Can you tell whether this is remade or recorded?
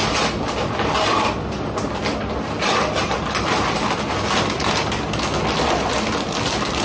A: recorded